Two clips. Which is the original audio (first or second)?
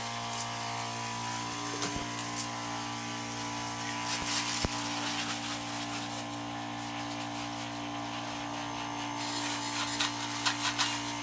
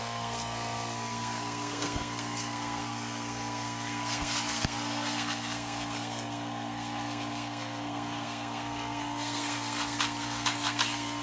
first